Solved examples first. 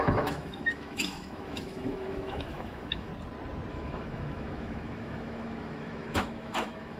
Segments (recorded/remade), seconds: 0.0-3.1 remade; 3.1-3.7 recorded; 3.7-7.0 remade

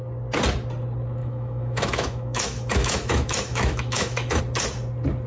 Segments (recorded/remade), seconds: 0.0-1.2 recorded; 1.2-4.4 remade; 4.4-5.3 recorded

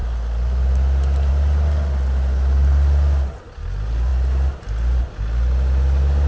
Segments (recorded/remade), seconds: 0.0-6.3 recorded